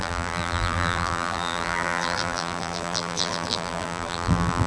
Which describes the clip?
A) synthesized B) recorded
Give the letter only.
A